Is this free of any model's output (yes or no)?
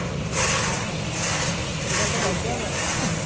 yes